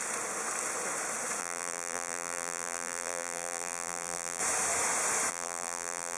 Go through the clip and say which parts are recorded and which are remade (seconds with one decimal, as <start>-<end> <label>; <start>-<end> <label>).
0.0-1.4 recorded; 1.4-4.4 remade; 4.4-5.3 recorded; 5.3-6.2 remade

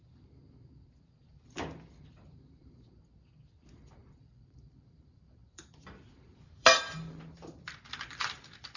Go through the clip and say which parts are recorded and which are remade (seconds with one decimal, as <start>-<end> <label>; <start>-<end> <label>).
0.0-1.3 recorded; 1.3-2.9 remade; 2.9-4.0 recorded; 4.0-8.8 remade